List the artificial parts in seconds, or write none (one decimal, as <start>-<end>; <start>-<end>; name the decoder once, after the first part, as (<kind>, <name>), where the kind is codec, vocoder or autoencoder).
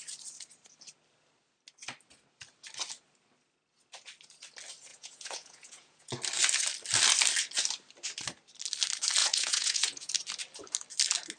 4.9-6.1 (vocoder, Vocos); 9.2-10.1